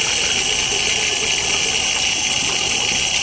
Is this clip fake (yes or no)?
no